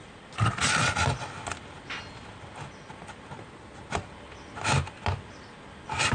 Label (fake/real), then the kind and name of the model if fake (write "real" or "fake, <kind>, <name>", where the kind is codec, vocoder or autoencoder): real